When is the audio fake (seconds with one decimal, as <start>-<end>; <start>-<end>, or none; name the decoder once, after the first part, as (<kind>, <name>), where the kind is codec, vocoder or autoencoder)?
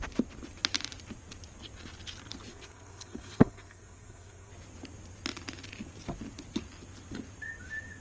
2.5-4.5 (codec, SNAC)